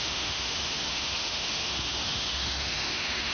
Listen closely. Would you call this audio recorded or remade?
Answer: remade